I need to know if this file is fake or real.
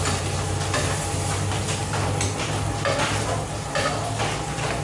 real